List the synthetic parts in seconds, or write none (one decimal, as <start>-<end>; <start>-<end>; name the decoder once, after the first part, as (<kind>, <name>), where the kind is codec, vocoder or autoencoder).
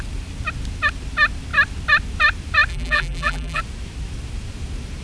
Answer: 2.7-3.6 (vocoder, BigVGAN v2)